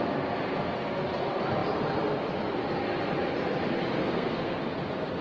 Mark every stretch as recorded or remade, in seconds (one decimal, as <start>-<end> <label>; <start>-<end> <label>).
0.0-4.0 recorded; 4.0-4.6 remade; 4.6-5.2 recorded